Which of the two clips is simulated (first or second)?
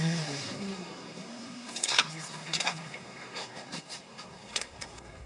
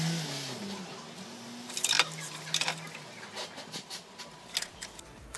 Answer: first